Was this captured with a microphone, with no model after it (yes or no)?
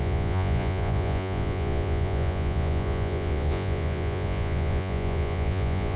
no